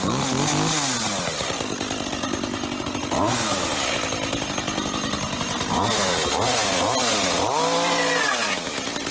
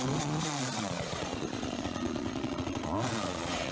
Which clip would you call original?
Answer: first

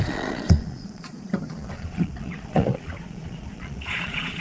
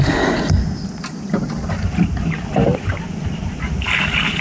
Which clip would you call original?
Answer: second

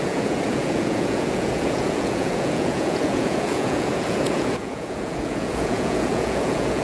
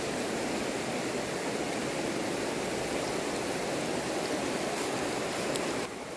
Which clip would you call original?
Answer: second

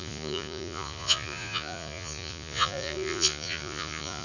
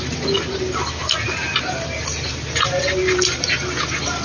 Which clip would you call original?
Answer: second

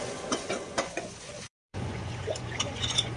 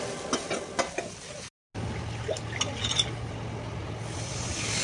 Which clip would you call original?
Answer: second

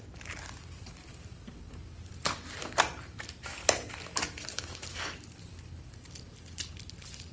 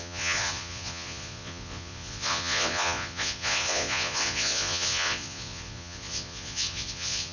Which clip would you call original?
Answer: first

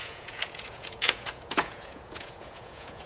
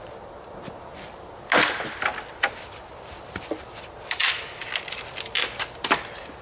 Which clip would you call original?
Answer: second